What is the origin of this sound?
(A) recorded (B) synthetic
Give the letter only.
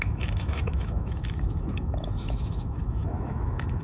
B